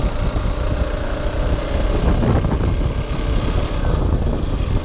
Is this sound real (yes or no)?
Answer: yes